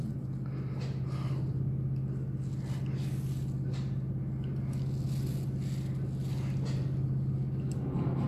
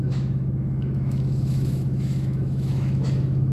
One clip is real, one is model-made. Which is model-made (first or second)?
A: second